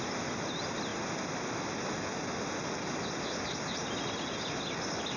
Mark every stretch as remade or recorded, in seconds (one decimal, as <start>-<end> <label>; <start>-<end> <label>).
0.0-5.2 recorded